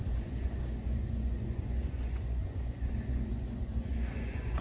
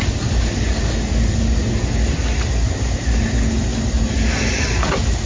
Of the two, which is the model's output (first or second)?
first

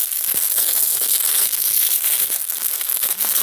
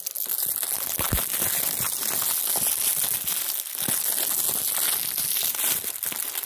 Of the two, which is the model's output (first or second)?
first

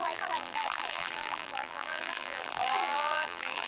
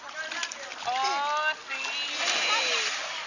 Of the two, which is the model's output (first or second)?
first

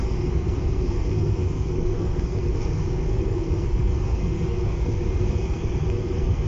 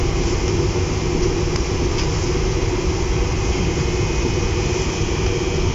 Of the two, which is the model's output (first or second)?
first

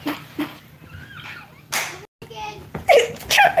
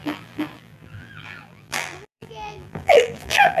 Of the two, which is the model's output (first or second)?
second